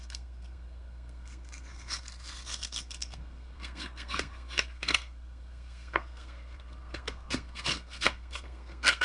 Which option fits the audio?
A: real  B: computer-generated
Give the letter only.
B